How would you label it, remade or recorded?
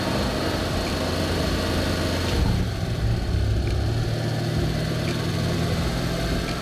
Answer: recorded